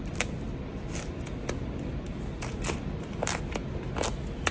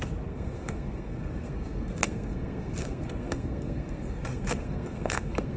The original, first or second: first